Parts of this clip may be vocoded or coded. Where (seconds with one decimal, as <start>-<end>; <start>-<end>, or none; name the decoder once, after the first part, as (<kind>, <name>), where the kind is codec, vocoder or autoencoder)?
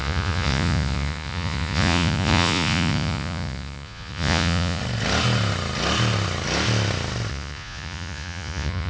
0.0-4.8 (vocoder, Vocos); 7.3-8.9